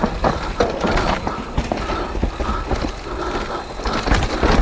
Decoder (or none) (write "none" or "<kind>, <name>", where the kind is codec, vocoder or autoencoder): none